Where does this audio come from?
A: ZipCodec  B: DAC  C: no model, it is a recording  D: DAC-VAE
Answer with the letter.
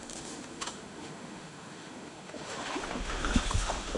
D